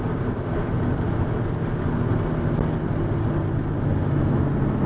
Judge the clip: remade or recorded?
recorded